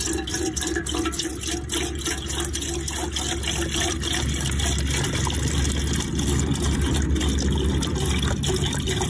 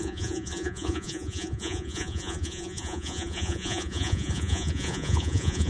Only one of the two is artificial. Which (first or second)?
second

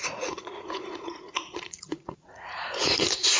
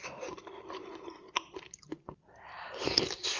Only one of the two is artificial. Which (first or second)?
first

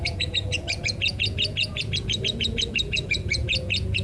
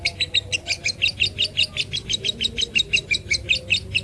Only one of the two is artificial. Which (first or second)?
first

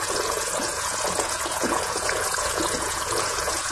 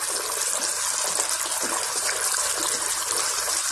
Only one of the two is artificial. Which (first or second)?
first